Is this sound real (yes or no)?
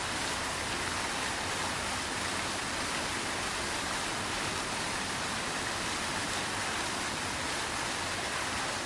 yes